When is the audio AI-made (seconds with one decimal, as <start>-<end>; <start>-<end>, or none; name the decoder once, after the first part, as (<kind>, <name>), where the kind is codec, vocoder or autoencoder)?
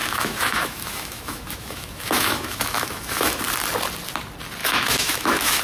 0.0-3.4 (autoencoder, DAC-VAE); 4.6-5.6